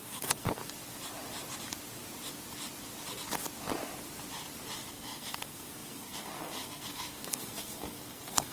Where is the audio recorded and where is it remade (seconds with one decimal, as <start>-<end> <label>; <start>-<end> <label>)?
0.0-0.6 remade; 0.6-4.9 recorded; 4.9-8.5 remade